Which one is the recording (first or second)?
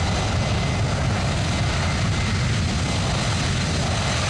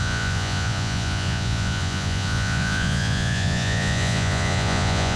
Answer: first